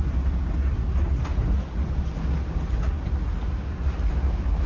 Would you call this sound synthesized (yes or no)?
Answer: no